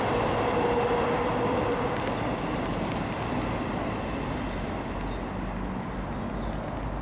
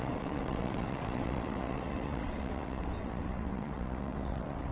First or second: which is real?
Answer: first